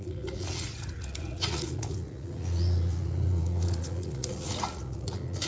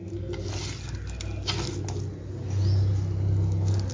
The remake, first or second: first